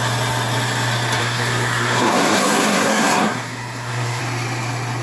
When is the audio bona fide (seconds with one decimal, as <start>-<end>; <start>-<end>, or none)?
0.0-1.2; 4.2-5.0